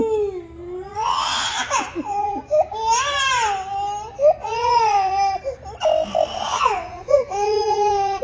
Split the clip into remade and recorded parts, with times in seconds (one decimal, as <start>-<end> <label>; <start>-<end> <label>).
0.0-0.9 recorded; 0.9-2.4 remade; 2.4-4.4 recorded; 4.4-5.1 remade; 5.1-6.5 recorded; 6.5-8.2 remade